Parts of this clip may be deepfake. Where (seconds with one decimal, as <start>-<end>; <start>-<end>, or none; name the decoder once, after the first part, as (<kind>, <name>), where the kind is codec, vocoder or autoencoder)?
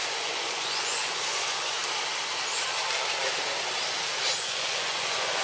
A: 0.0-1.8 (vocoder, Vocos); 4.3-5.4